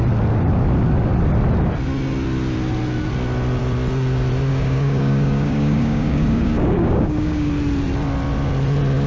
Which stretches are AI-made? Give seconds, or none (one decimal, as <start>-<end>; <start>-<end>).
4.5-7.5